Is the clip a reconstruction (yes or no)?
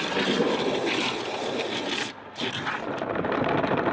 no